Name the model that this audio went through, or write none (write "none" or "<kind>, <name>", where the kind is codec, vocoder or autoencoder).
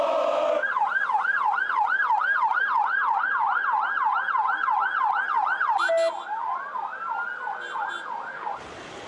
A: none